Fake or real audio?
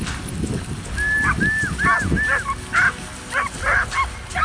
real